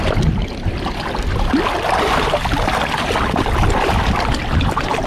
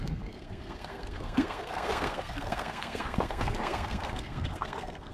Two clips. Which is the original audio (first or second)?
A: first